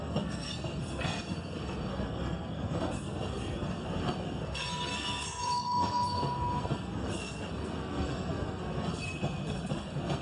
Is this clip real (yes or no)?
no